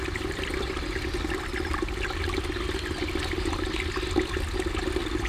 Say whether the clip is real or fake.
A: real